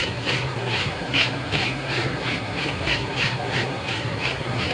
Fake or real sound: fake